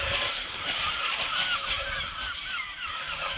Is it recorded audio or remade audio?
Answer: remade